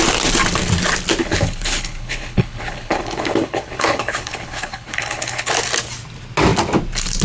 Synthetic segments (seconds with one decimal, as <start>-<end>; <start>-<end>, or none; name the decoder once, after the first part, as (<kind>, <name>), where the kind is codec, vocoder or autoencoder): 1.2-5.5 (codec, HILCodec)